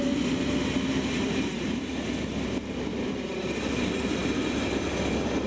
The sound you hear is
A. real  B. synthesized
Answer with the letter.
A